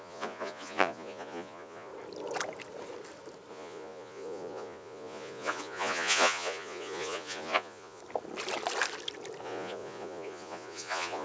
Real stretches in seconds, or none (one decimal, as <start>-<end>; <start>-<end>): 1.9-3.5; 8.0-9.4